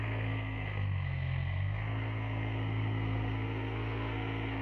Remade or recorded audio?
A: remade